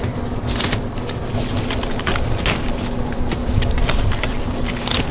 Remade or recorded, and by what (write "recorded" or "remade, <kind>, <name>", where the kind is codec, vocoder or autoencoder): recorded